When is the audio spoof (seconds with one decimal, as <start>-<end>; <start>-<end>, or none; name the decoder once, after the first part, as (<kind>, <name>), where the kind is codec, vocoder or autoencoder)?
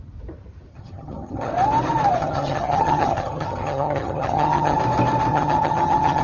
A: 0.7-1.5 (vocoder, HiFi-GAN); 2.2-4.8; 5.3-6.2